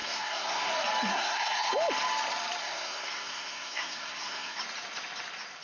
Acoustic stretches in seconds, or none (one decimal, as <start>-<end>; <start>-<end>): 0.7-1.1; 1.7-2.6; 4.6-5.6